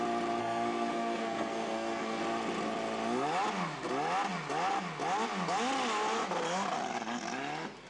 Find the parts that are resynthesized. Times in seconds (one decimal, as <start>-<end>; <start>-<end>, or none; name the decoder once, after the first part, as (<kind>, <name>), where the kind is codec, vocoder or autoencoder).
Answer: 0.4-2.2 (codec, SNAC)